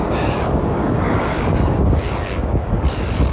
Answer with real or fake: fake